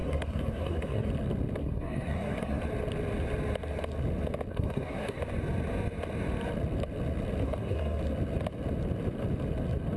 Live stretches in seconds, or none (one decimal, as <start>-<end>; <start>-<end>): 1.1-1.6; 2.6-4.5; 5.2-7.4; 8.0-10.0